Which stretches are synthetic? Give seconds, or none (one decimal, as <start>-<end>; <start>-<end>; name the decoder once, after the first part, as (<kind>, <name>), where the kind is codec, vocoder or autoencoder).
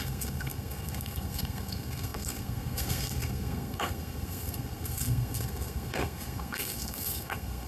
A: 0.0-7.7 (codec, SNAC)